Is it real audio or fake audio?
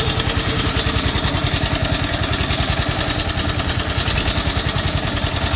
real